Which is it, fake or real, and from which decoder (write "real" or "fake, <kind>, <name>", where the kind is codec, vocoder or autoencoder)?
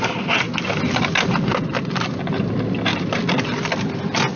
real